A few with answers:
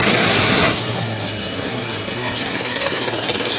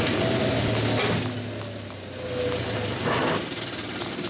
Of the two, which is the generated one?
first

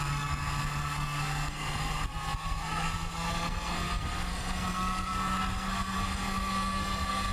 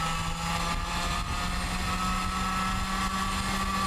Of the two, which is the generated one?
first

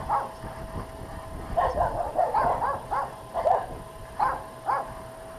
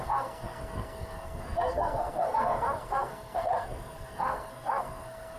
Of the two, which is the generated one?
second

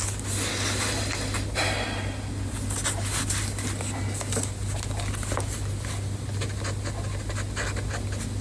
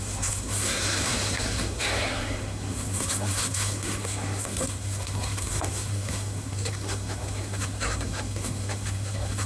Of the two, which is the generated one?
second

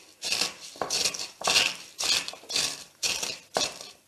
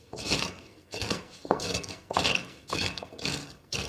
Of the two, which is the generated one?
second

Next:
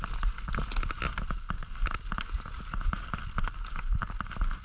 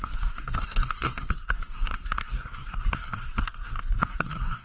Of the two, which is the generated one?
second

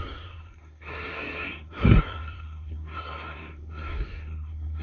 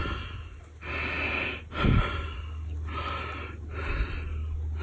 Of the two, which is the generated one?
first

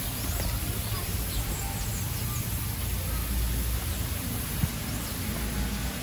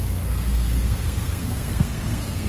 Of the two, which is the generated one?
second